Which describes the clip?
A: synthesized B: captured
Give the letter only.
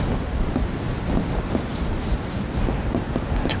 B